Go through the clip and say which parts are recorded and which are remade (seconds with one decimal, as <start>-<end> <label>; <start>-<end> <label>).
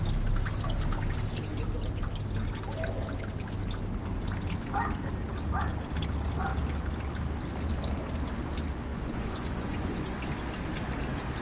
0.0-8.9 recorded; 8.9-10.2 remade; 10.2-11.4 recorded